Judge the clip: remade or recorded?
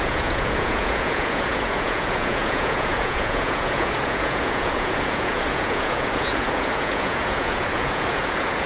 remade